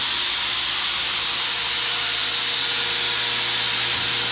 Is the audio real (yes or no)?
yes